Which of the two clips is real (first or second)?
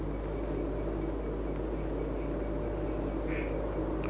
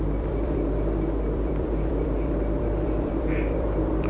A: first